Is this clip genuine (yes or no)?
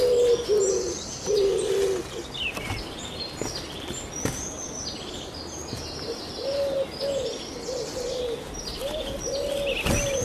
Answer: yes